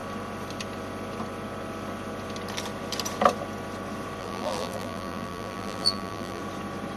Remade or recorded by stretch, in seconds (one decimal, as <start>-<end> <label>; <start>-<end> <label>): 0.0-4.2 recorded; 4.2-6.4 remade; 6.4-7.0 recorded